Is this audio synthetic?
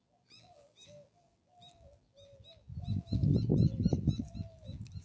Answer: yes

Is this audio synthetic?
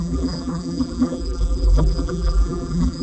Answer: yes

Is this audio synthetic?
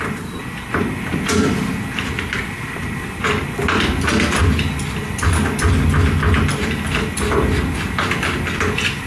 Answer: no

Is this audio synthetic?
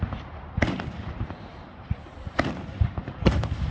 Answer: yes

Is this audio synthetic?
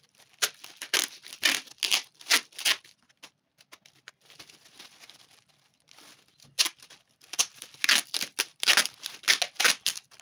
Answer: no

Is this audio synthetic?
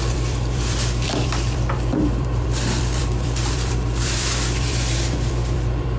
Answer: yes